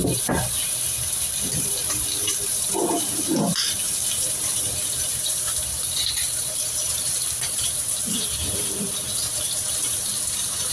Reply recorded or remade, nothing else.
remade